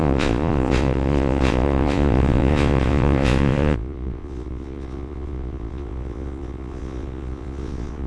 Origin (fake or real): fake